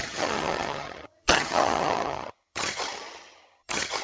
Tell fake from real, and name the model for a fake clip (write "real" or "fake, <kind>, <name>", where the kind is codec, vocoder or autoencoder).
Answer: fake, vocoder, HiFi-GAN